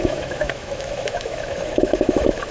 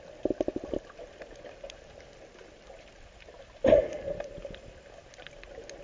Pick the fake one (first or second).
first